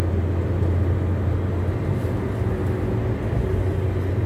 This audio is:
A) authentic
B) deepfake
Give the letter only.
A